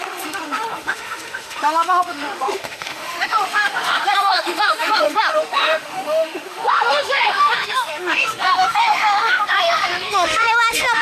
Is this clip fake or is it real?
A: fake